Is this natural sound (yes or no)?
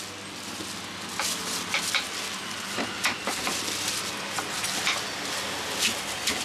yes